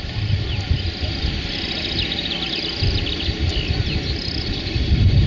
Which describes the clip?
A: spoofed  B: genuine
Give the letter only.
B